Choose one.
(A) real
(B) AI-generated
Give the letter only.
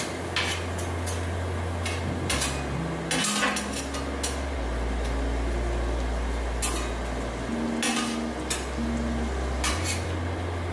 A